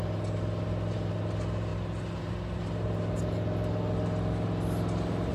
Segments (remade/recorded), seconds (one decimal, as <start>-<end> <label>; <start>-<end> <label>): 0.0-5.3 recorded